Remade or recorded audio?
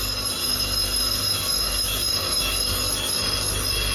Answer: recorded